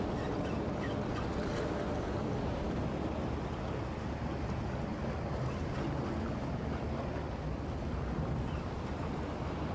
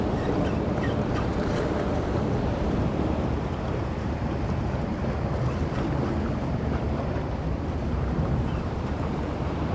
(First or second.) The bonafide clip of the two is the first